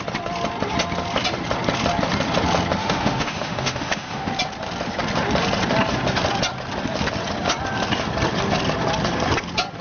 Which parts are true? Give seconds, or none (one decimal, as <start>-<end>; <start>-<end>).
0.0-2.8; 4.3-9.8